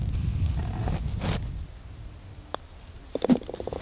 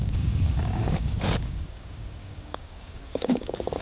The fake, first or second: second